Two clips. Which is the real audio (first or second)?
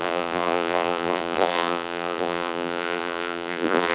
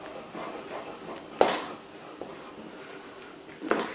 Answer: second